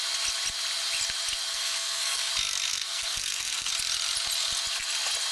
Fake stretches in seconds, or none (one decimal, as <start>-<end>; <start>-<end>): 1.5-2.3; 2.7-3.7